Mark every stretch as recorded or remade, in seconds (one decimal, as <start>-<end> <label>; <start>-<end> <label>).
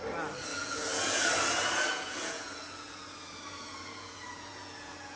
0.0-0.5 recorded; 0.5-1.3 remade; 1.3-1.9 recorded; 1.9-5.2 remade